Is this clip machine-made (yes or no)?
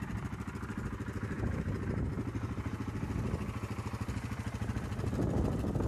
no